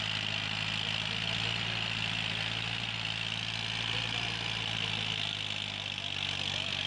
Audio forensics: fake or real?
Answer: real